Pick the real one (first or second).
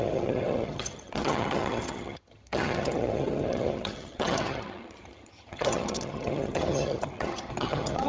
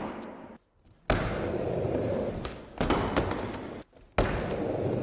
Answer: second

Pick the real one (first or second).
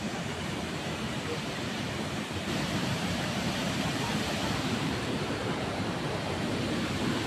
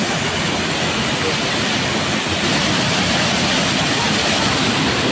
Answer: second